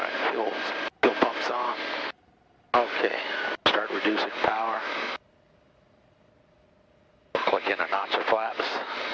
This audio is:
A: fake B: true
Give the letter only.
B